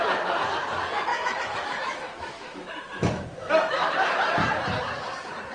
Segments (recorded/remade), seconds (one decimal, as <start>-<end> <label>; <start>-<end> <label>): 0.0-1.1 recorded; 1.1-3.5 remade; 3.5-5.5 recorded